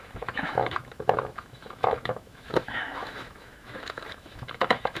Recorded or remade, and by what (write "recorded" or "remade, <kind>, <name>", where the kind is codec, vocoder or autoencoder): remade, autoencoder, DAC-VAE